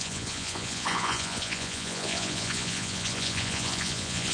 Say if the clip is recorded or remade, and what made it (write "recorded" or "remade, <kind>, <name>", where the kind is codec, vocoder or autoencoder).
remade, vocoder, Vocos